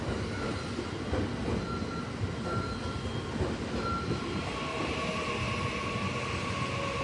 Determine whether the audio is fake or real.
real